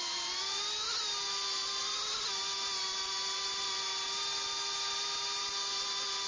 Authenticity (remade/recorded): recorded